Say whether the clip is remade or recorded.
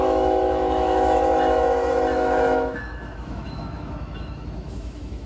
remade